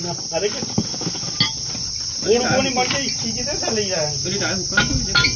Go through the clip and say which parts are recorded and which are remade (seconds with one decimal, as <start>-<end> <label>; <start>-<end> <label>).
0.0-5.4 recorded